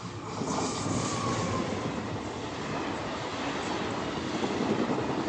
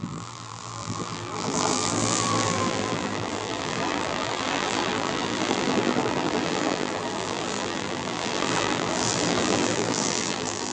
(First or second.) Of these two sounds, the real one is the first